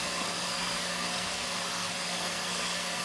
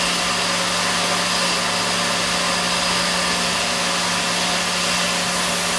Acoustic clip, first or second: second